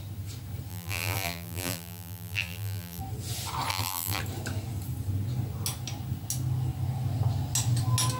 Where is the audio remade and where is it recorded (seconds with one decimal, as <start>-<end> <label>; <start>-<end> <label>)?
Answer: 0.0-0.7 recorded; 0.7-3.0 remade; 3.0-3.7 recorded; 3.7-4.2 remade; 4.2-8.2 recorded